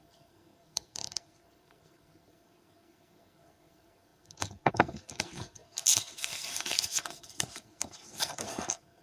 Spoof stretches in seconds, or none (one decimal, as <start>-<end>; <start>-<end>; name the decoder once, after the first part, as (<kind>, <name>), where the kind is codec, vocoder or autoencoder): 0.0-9.0 (codec, SNAC)